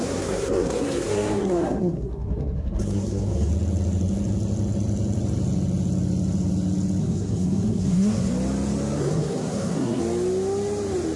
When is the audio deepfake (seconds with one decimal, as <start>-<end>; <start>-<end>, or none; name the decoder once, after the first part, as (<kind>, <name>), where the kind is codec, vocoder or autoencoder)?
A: 0.0-3.5 (codec, SNAC); 7.0-8.3; 9.0-10.0